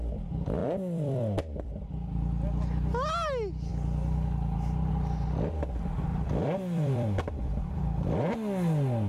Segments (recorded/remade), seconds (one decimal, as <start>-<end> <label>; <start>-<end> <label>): 0.0-0.6 recorded; 0.6-1.8 remade; 1.8-6.1 recorded; 6.1-8.3 remade; 8.3-9.1 recorded